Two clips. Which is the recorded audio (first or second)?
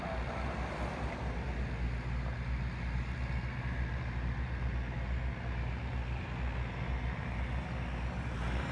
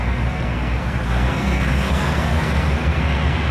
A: first